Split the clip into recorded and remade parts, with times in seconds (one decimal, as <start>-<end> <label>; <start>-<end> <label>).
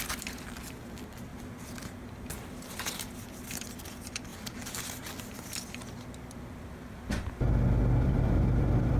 0.0-1.3 remade; 1.3-2.7 recorded; 2.7-4.3 remade; 4.3-8.0 recorded; 8.0-9.0 remade